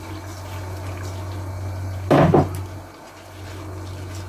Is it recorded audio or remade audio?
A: recorded